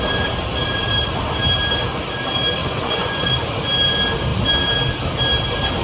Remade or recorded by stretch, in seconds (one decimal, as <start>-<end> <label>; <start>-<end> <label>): 0.0-2.6 recorded; 2.6-3.3 remade; 3.3-5.8 recorded